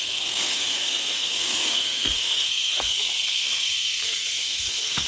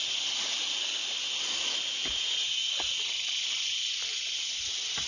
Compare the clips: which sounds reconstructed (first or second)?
first